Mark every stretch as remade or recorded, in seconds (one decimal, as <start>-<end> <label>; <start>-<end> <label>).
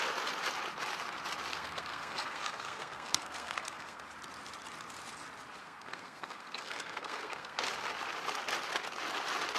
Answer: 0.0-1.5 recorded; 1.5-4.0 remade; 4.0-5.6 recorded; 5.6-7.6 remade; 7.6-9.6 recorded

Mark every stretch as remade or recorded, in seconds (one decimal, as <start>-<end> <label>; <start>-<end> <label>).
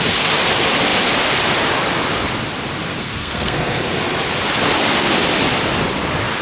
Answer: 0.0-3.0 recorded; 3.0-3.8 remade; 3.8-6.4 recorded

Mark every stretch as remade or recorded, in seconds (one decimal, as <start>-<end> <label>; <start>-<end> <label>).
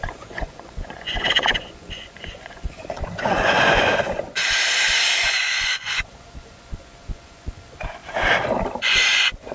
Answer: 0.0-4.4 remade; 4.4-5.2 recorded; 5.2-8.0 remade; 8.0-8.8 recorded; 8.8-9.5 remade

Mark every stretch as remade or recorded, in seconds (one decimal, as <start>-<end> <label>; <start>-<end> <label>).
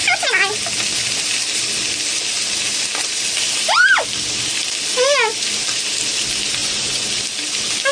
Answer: 0.0-6.6 recorded; 6.6-7.1 remade; 7.1-7.9 recorded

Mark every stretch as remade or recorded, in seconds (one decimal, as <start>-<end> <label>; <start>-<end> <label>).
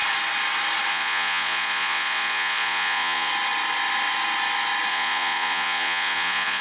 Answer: 0.0-0.9 recorded; 0.9-3.3 remade; 3.3-4.9 recorded; 4.9-6.6 remade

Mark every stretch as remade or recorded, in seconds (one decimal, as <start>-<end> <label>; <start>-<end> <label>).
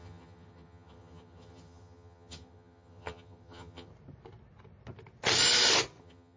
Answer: 0.0-3.9 remade; 3.9-6.0 recorded; 6.0-6.4 remade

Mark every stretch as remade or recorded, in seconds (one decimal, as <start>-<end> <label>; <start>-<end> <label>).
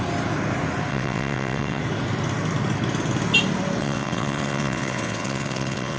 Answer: 0.0-0.9 recorded; 0.9-1.8 remade; 1.8-3.8 recorded; 3.8-6.0 remade